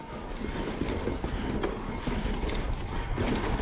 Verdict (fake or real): real